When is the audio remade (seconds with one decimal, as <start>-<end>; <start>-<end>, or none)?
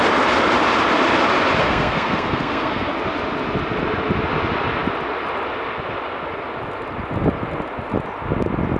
1.6-2.9